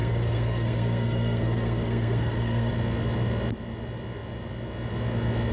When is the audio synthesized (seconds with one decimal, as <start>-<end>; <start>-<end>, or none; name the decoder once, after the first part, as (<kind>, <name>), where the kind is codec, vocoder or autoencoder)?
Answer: 0.0-2.7 (codec, SNAC)